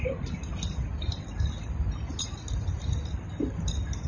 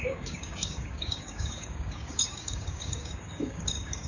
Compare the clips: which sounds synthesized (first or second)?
second